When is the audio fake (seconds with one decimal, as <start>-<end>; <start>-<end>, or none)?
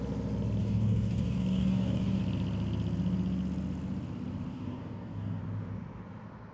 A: 0.6-2.2; 4.5-5.4